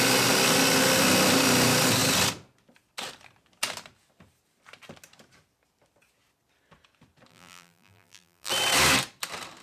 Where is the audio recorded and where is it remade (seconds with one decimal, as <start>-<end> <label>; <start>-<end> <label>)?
0.0-7.3 recorded; 7.3-8.5 remade; 8.5-9.6 recorded